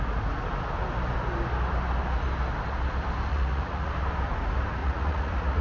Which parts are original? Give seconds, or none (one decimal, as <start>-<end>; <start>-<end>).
0.0-3.3; 3.9-4.8